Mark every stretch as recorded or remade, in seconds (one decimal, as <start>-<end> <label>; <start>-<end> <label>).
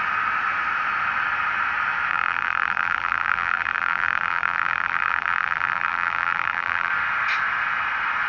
0.0-2.1 recorded; 2.1-6.9 remade; 6.9-8.3 recorded